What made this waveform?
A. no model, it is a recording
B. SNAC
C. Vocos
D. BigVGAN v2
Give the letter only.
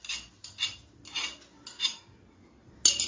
A